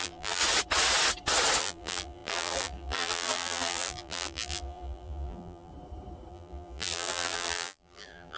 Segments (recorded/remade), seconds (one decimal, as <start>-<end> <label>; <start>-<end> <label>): 0.0-0.4 remade; 0.4-1.6 recorded; 1.6-5.7 remade; 5.7-6.3 recorded; 6.3-8.4 remade